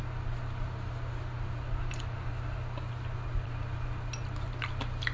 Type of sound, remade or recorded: recorded